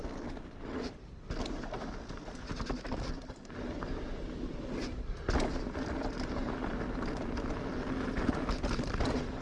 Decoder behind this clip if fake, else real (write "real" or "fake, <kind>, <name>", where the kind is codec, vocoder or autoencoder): real